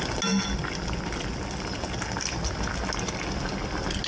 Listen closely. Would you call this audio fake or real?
real